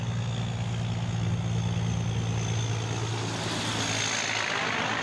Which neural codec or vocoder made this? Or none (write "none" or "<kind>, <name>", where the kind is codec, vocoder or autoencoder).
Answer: none